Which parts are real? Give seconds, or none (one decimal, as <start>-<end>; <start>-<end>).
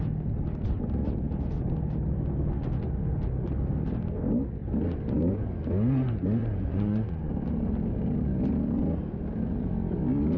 0.0-6.4; 7.3-10.4